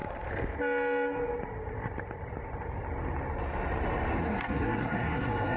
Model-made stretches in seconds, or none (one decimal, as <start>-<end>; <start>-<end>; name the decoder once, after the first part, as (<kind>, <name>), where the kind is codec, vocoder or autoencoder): 4.2-5.6 (codec, SNAC)